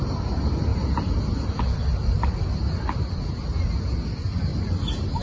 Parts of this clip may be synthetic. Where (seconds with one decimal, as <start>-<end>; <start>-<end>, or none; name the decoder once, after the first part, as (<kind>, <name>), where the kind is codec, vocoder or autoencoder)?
0.7-1.6 (vocoder, BigVGAN v2); 2.0-3.2; 4.5-5.2